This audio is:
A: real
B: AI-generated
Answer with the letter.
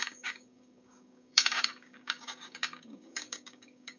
B